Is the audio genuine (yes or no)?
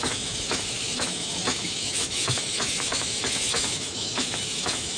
no